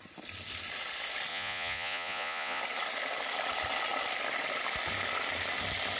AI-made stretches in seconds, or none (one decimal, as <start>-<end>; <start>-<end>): 1.3-2.6